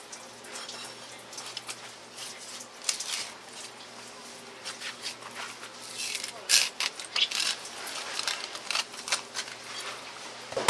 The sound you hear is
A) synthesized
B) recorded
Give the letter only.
B